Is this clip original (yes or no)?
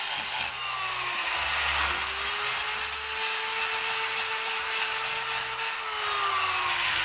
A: yes